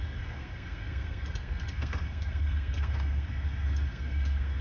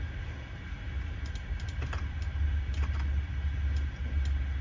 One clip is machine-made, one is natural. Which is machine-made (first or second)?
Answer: first